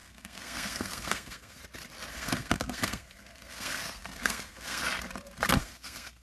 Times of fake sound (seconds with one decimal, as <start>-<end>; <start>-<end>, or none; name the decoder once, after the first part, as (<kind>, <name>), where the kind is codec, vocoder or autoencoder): 0.0-1.6 (codec, SNAC); 2.1-4.8; 5.6-6.2